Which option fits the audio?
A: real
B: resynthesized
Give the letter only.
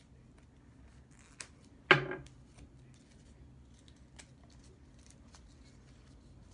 A